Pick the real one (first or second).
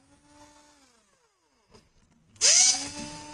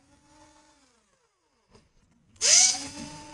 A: first